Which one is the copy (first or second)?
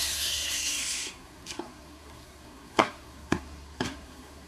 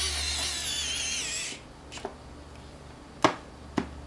first